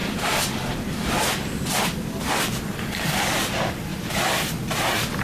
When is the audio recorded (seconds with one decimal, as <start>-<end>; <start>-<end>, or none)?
0.0-5.2